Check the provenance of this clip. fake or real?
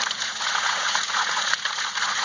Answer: fake